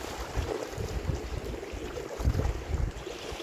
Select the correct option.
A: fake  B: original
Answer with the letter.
A